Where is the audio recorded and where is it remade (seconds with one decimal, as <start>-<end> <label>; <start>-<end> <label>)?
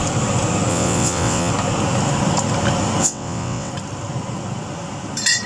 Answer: 0.0-0.7 recorded; 0.7-1.5 remade; 1.5-3.0 recorded; 3.0-3.7 remade; 3.7-5.5 recorded